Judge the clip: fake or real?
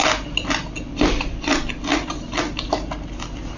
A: real